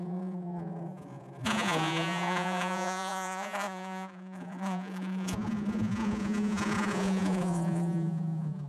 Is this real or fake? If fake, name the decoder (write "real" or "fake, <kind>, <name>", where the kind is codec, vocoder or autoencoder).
fake, vocoder, Vocos